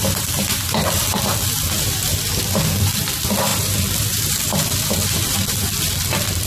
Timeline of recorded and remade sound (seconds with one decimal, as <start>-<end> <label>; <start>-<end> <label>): 0.0-6.5 remade

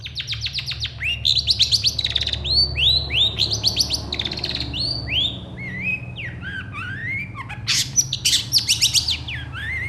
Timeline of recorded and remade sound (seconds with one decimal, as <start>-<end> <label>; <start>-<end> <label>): 0.0-9.9 recorded

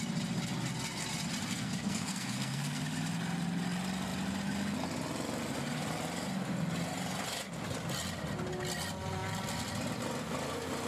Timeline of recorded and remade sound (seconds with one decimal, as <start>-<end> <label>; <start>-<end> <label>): 0.0-1.5 recorded; 1.5-2.8 remade; 2.8-10.9 recorded

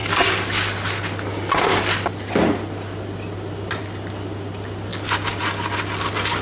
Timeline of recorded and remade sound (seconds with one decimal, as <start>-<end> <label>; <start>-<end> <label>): 0.0-6.4 recorded

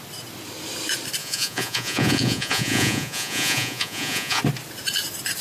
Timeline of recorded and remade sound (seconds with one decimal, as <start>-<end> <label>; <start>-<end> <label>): 0.0-1.2 recorded; 1.2-4.4 remade; 4.4-5.4 recorded